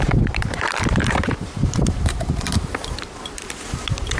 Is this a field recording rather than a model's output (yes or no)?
no